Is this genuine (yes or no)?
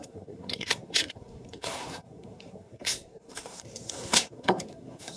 no